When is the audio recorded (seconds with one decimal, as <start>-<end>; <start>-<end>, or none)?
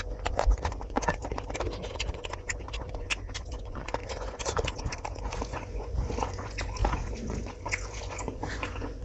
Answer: 1.2-1.9